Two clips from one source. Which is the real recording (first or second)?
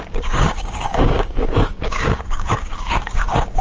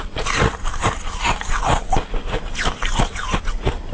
second